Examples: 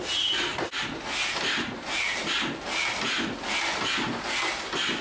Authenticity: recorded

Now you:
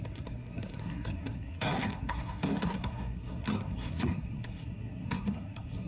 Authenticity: remade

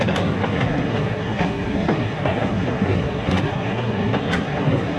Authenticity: remade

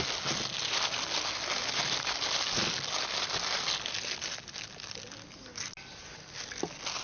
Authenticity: recorded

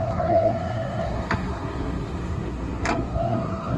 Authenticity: remade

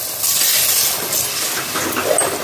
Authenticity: recorded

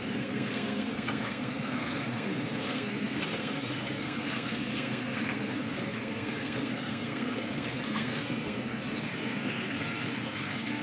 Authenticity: remade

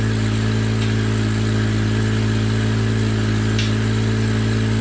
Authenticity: recorded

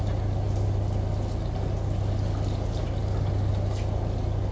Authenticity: recorded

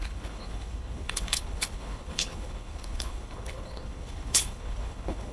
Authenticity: remade